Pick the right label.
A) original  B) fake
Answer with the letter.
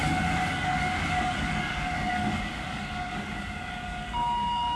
B